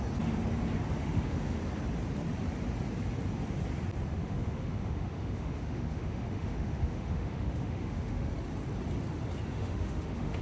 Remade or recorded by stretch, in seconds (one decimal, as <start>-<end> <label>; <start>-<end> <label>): 0.0-1.0 recorded; 1.0-1.6 remade; 1.6-4.2 recorded; 4.2-8.3 remade; 8.3-9.5 recorded; 9.5-10.4 remade

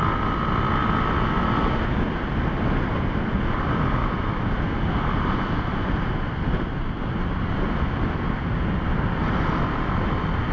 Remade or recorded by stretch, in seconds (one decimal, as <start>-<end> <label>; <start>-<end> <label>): 0.0-4.0 recorded; 4.0-4.6 remade; 4.6-10.5 recorded

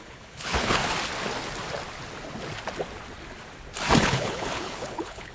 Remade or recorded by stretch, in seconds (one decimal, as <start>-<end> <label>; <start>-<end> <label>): 0.0-0.8 remade; 0.8-4.0 recorded; 4.0-5.3 remade

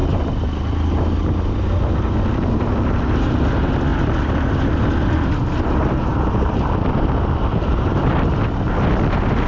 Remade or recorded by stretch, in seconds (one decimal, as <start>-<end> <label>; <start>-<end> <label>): 0.0-7.5 recorded; 7.5-8.4 remade; 8.4-9.5 recorded

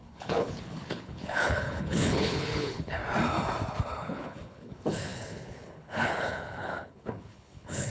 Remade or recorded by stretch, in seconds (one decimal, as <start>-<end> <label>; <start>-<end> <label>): 0.0-3.0 remade; 3.0-3.8 recorded; 3.8-7.9 remade

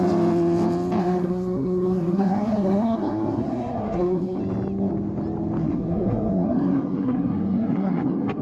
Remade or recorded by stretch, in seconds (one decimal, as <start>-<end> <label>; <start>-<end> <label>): 0.0-1.0 recorded; 1.0-4.4 remade; 4.4-5.6 recorded; 5.6-8.4 remade

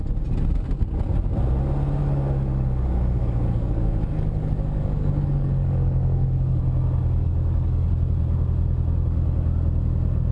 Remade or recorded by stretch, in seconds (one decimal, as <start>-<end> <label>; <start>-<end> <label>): 0.0-2.0 recorded; 2.0-6.6 remade; 6.6-7.2 recorded; 7.2-7.9 remade; 7.9-10.3 recorded